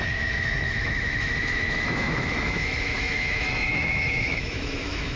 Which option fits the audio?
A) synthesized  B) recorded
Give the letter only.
A